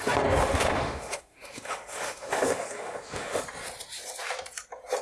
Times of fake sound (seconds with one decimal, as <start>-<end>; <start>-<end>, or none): 0.4-3.4